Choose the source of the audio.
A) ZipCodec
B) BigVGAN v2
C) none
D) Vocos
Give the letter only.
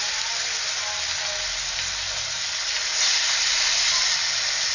C